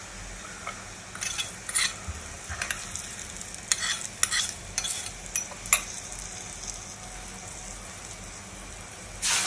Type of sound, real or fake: real